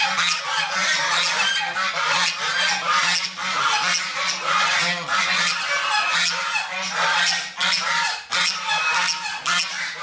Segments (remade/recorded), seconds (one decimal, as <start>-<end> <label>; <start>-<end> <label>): 0.0-10.0 recorded